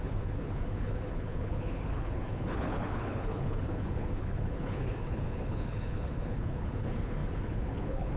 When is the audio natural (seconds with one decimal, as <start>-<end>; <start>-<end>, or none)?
none

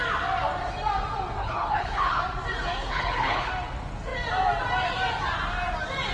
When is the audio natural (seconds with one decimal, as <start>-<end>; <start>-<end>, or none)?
0.0-1.4; 2.2-2.8; 3.5-6.1

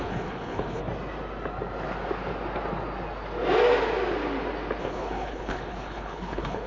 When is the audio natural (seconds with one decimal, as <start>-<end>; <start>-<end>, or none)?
0.8-4.8

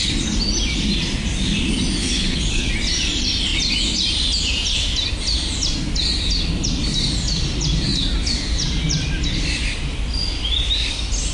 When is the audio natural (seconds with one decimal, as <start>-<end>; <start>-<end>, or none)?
0.0-2.0; 2.7-11.3

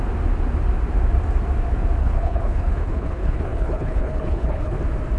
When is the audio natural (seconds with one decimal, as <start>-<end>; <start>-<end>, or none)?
0.0-2.0; 4.8-5.2

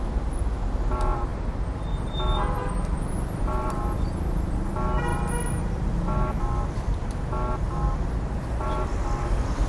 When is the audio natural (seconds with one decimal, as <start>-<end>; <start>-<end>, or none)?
0.0-9.7

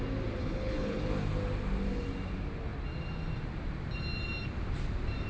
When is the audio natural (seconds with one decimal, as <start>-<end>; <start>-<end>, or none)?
0.0-0.4; 1.0-5.3

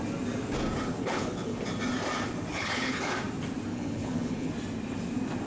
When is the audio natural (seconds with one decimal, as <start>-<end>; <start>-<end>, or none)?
0.0-1.0; 1.6-2.5; 3.0-3.7; 4.5-5.5